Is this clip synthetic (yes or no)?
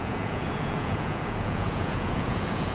yes